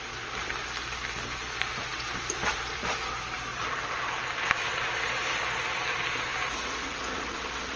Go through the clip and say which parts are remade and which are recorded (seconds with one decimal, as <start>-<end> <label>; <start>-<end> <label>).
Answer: 0.0-1.9 recorded; 1.9-2.9 remade; 2.9-3.5 recorded; 3.5-5.4 remade; 5.4-6.3 recorded; 6.3-7.8 remade

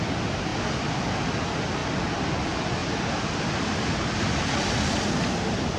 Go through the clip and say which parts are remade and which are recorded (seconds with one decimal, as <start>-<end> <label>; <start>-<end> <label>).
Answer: 0.0-2.8 recorded; 2.8-5.1 remade; 5.1-5.8 recorded

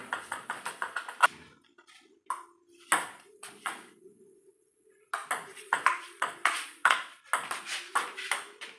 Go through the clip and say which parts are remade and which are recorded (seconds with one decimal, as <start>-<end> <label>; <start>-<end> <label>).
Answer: 0.0-1.0 remade; 1.0-3.1 recorded; 3.1-5.1 remade; 5.1-5.5 recorded; 5.5-7.2 remade; 7.2-8.8 recorded

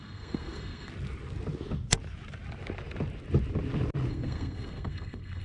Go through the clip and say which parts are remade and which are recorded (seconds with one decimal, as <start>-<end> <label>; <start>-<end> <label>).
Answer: 0.0-0.9 remade; 0.9-4.1 recorded; 4.1-5.4 remade

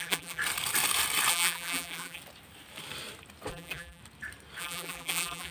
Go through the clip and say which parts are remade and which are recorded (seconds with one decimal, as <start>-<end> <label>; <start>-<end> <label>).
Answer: 0.0-0.4 remade; 0.4-1.3 recorded; 1.3-2.2 remade; 2.2-3.5 recorded; 3.5-4.0 remade; 4.0-4.6 recorded; 4.6-5.5 remade

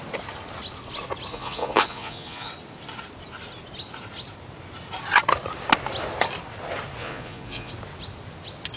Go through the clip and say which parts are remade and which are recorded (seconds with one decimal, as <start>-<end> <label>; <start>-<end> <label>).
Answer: 0.0-1.3 recorded; 1.3-2.5 remade; 2.5-7.0 recorded; 7.0-7.7 remade; 7.7-8.8 recorded

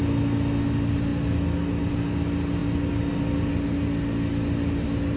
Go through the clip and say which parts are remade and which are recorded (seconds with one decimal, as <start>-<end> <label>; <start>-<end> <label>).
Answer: 0.0-5.2 recorded